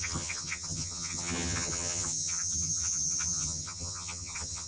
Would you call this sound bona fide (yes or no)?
no